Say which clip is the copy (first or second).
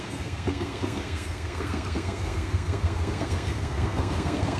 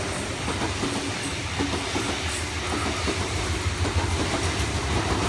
first